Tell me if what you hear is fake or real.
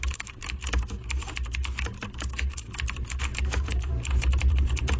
fake